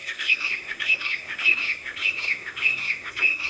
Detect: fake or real fake